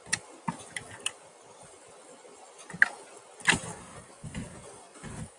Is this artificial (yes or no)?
no